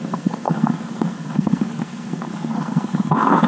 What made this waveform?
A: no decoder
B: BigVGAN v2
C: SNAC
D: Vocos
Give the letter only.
C